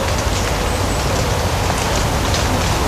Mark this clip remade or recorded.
recorded